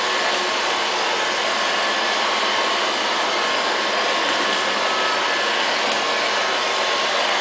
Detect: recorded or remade recorded